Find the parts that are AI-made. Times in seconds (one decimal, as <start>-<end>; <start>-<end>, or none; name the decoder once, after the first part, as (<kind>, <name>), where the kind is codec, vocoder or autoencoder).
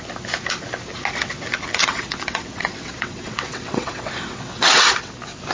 1.8-5.1 (vocoder, WaveNeXt)